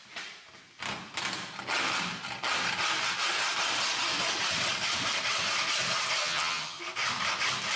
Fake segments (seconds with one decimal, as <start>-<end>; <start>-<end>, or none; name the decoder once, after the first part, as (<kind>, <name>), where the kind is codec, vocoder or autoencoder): 6.2-6.8 (vocoder, HiFi-GAN)